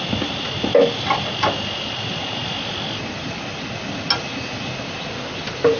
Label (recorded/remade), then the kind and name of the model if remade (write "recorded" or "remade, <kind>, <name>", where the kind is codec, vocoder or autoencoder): recorded